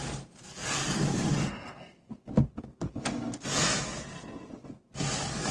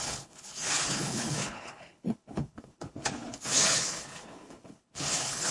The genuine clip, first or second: first